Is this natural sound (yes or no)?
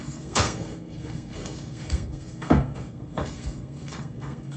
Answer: no